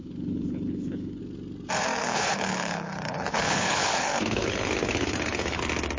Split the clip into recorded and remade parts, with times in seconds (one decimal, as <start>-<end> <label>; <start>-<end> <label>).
0.0-1.2 remade; 1.2-2.0 recorded; 2.0-5.6 remade; 5.6-6.0 recorded